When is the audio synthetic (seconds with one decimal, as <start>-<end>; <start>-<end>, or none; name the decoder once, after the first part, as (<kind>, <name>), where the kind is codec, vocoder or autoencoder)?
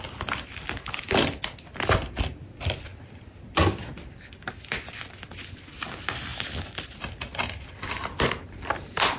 none